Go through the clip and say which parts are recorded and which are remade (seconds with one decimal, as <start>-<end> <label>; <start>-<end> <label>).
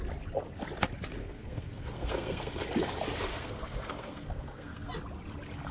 0.0-1.2 recorded; 1.2-2.5 remade; 2.5-3.3 recorded; 3.3-4.9 remade; 4.9-5.7 recorded